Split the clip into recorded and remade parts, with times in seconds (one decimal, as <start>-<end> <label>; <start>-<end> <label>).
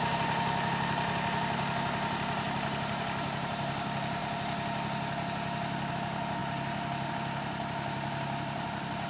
0.0-4.2 remade; 4.2-5.9 recorded; 5.9-9.1 remade